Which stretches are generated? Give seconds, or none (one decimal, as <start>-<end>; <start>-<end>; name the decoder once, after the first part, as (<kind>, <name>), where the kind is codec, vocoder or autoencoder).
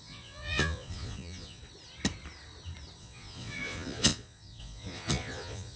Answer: 0.0-1.6 (vocoder, Vocos); 3.0-5.8